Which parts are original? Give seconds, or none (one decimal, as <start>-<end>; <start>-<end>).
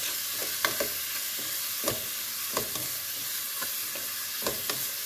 0.0-5.1